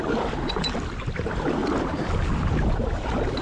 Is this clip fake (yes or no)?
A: no